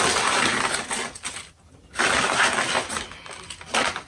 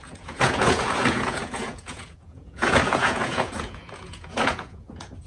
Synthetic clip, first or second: second